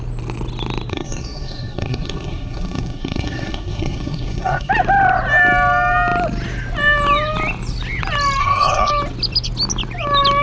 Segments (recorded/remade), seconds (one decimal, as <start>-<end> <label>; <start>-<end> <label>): 0.0-0.9 recorded; 0.9-4.7 remade; 4.7-8.4 recorded; 8.4-8.9 remade; 8.9-10.4 recorded